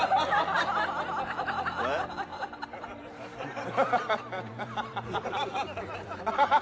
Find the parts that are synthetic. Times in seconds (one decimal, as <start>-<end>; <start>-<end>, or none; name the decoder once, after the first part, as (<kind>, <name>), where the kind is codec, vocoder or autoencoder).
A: 0.0-0.6 (vocoder, BigVGAN v2); 2.3-6.6